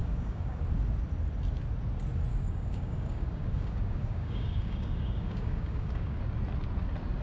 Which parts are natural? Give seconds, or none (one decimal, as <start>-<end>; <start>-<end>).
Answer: 0.6-2.3; 6.2-7.2